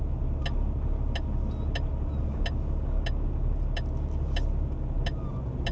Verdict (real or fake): real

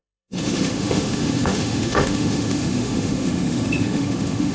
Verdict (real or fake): fake